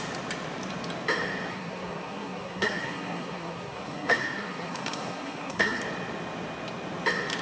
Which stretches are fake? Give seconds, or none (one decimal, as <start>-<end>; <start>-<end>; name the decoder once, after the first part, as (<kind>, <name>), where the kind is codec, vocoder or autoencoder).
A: 1.5-5.8 (codec, SNAC)

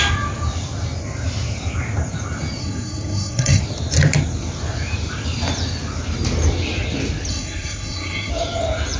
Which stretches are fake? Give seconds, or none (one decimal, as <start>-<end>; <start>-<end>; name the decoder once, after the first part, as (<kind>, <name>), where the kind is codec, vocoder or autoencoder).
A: 2.6-3.6 (codec, SNAC); 7.3-8.3